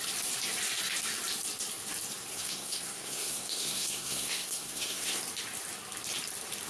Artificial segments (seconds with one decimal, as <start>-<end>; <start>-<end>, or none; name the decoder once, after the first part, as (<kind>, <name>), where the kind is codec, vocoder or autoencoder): 2.3-5.2 (codec, SNAC)